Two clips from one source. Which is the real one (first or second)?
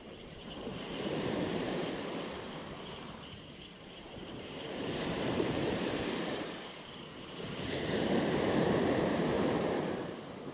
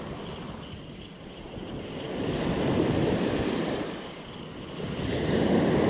second